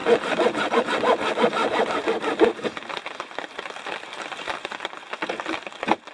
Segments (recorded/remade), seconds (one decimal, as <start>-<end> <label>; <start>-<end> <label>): 0.0-1.6 recorded; 1.6-5.3 remade; 5.3-6.1 recorded